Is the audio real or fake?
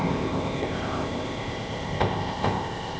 fake